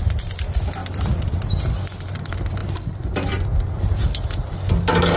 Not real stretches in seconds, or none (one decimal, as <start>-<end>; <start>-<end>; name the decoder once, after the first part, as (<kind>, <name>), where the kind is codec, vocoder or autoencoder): none